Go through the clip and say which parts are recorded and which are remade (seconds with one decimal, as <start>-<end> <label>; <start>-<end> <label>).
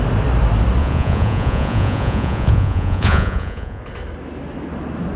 0.0-0.8 recorded; 0.8-3.8 remade; 3.8-5.2 recorded